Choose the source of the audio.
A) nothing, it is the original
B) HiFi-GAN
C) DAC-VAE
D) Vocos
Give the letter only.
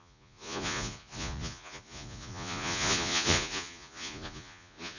D